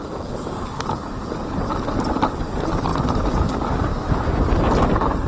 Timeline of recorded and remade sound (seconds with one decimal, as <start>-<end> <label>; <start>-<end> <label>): 0.0-5.3 recorded